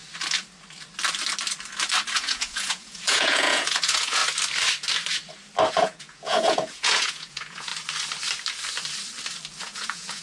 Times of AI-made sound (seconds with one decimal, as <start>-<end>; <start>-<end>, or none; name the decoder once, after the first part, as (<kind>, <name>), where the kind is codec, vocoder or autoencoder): 2.1-4.2 (vocoder, Vocos); 5.7-7.7; 9.6-10.2